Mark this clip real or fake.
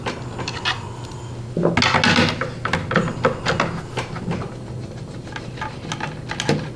real